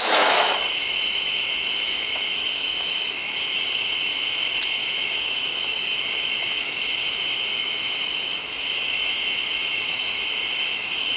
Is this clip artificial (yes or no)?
yes